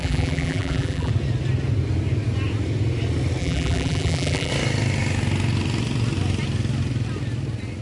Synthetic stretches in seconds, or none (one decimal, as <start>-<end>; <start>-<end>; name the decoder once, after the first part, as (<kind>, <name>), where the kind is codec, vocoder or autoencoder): 0.0-1.1 (vocoder, BigVGAN v2); 3.4-4.5